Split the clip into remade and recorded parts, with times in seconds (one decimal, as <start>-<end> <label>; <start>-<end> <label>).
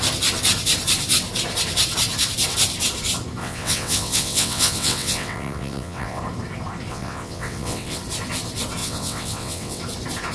0.0-3.4 recorded; 3.4-6.2 remade; 6.2-6.9 recorded; 6.9-8.0 remade; 8.0-8.8 recorded; 8.8-9.8 remade; 9.8-10.3 recorded